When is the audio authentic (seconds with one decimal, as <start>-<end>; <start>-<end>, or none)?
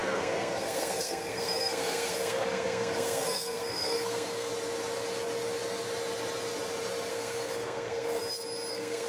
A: 4.5-7.1; 8.2-8.7